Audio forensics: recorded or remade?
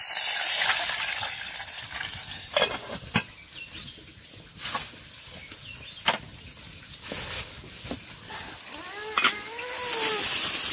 recorded